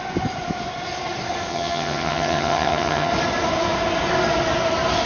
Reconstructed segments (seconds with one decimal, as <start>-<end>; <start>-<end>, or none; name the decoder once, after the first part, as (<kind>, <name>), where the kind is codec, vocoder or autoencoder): 1.5-3.1 (vocoder, HiFi-GAN)